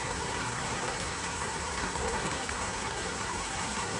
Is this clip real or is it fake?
fake